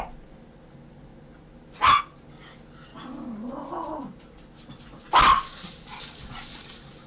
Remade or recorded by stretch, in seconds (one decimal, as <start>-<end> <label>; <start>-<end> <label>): 0.0-7.1 recorded